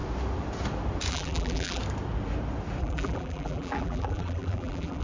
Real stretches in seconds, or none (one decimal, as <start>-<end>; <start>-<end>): 0.0-1.1; 1.8-2.8